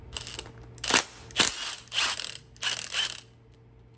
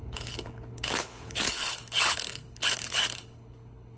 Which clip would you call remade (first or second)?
second